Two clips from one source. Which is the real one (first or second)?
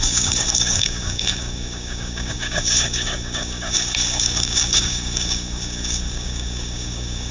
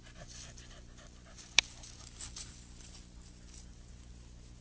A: second